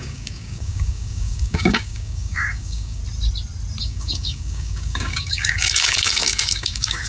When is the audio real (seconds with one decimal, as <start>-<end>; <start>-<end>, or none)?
3.0-3.8